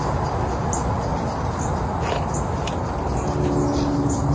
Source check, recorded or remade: recorded